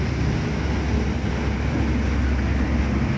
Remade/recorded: recorded